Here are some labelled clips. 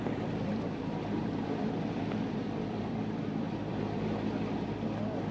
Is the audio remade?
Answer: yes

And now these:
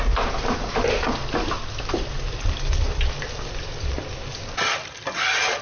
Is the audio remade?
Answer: no